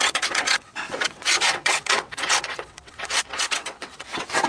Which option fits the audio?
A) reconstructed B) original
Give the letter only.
A